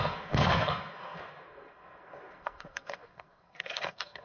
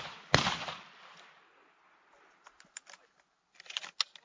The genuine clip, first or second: second